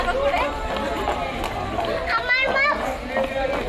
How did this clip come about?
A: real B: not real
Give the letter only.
A